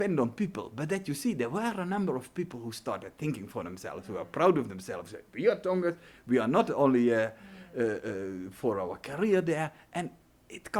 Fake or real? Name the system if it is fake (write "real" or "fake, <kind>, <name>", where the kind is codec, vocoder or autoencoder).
real